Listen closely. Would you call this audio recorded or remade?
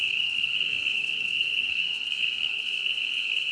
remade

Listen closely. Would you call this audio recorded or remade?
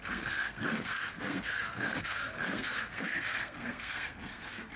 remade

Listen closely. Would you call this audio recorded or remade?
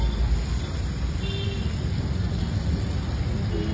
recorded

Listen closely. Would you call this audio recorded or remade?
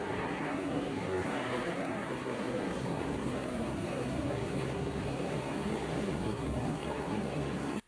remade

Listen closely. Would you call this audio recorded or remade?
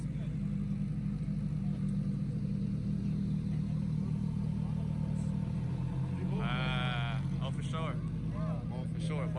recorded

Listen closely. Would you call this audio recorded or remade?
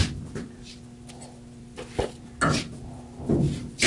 recorded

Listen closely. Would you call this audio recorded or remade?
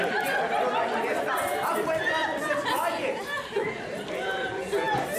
recorded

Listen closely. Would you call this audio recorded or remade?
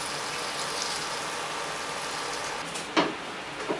recorded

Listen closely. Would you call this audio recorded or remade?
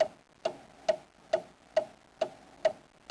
recorded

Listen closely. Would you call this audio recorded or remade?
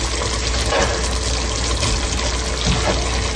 recorded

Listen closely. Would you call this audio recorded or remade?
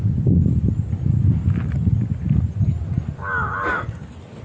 recorded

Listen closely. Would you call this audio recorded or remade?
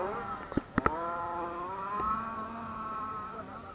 recorded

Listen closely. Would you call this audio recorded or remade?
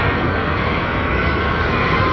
remade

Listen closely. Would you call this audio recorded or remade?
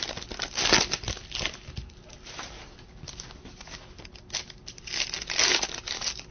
recorded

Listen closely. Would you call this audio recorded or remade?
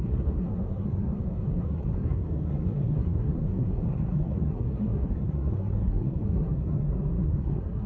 remade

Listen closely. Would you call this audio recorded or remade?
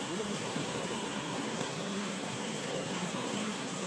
remade